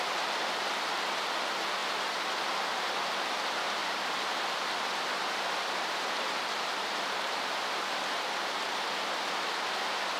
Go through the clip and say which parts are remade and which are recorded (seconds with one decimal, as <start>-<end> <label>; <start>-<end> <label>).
0.0-3.8 recorded; 3.8-8.0 remade; 8.0-10.2 recorded